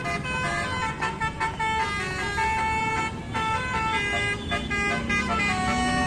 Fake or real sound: real